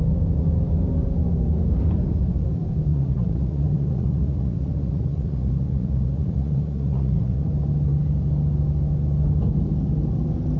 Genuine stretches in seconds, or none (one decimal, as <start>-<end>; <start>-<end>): 0.0-2.9; 7.5-10.6